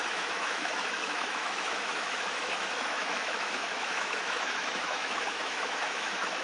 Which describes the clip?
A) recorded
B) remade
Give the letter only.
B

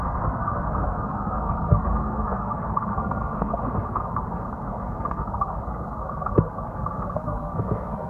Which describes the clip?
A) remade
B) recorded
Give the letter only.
A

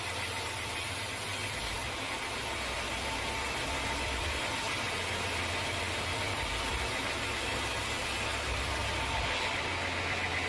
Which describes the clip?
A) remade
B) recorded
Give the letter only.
B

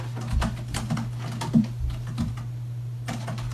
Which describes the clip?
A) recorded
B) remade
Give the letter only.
A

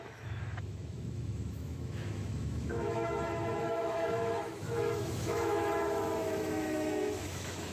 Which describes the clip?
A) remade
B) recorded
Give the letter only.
A